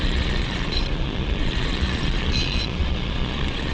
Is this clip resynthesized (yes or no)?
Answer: yes